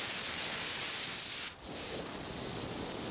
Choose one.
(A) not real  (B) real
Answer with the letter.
B